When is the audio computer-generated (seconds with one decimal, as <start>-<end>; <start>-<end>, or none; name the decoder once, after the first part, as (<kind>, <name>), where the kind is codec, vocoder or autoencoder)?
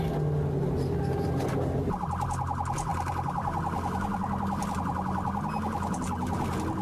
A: none